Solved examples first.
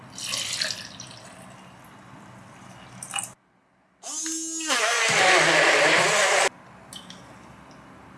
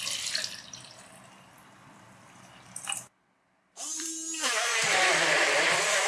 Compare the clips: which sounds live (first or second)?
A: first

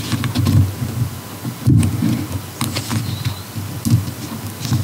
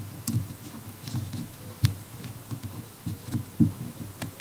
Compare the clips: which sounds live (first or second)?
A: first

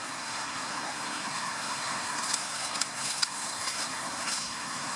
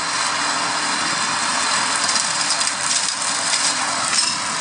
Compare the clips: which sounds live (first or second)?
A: second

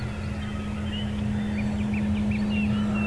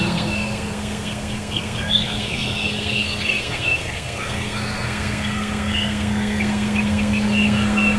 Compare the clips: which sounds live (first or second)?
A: first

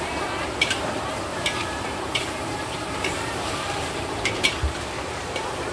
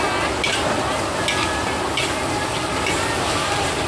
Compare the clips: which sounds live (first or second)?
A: second